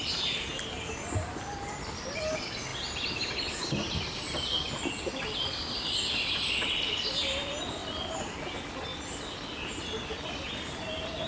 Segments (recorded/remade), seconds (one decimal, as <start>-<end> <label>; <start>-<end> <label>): 0.0-2.7 recorded; 2.7-3.3 remade; 3.3-11.3 recorded